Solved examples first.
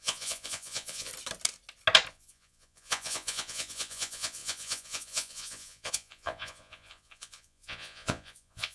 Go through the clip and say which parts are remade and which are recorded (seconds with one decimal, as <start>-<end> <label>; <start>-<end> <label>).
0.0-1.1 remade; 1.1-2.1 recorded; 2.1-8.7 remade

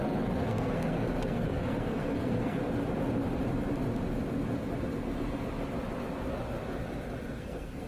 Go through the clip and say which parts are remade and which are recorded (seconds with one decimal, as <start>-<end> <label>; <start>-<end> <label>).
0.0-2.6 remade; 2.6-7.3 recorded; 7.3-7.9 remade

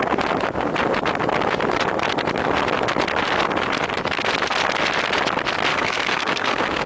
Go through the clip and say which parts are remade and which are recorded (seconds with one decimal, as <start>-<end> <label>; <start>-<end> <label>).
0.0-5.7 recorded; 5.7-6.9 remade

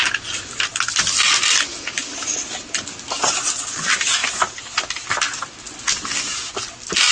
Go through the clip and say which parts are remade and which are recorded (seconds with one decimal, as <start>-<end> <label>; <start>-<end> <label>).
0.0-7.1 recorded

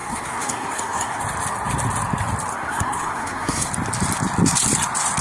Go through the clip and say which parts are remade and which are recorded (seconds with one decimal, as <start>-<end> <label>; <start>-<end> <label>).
0.0-1.2 remade; 1.2-2.5 recorded; 2.5-3.7 remade; 3.7-5.2 recorded

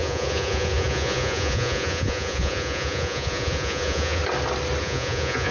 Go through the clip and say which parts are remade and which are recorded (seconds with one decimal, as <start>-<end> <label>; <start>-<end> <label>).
0.0-4.2 remade; 4.2-4.8 recorded; 4.8-5.5 remade

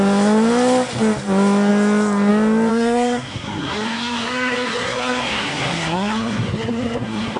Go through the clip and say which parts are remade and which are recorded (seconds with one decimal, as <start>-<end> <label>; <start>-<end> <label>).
0.0-2.7 recorded; 2.7-7.4 remade

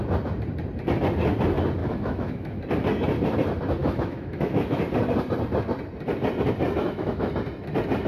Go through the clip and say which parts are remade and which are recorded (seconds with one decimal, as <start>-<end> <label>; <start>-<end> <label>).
0.0-1.8 recorded; 1.8-2.6 remade; 2.6-3.8 recorded; 3.8-4.8 remade; 4.8-6.8 recorded; 6.8-7.3 remade; 7.3-8.1 recorded